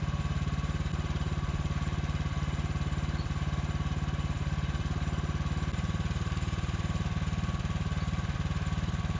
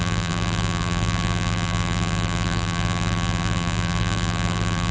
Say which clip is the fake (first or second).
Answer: second